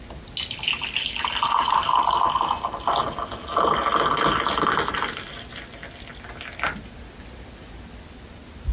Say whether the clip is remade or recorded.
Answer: recorded